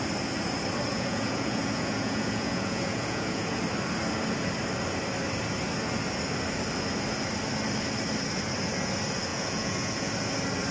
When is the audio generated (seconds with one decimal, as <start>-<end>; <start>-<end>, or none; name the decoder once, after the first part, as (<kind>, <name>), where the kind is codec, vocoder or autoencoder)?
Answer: 0.9-3.6 (vocoder, Vocos); 9.3-10.1